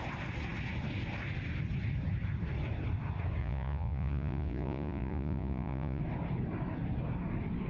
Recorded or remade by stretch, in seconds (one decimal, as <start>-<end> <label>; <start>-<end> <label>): 0.0-3.4 recorded; 3.4-6.0 remade; 6.0-7.7 recorded